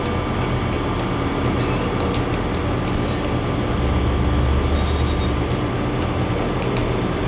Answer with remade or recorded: recorded